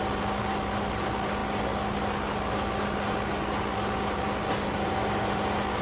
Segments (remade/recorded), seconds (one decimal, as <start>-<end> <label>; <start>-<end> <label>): 0.0-5.8 recorded